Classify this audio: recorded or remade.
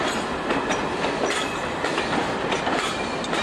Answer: recorded